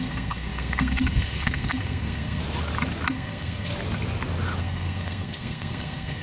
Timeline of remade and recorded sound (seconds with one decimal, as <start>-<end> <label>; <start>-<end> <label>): 0.0-2.4 remade; 2.4-3.1 recorded; 3.1-3.7 remade; 3.7-4.6 recorded; 4.6-6.2 remade